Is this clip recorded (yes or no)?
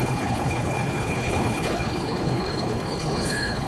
no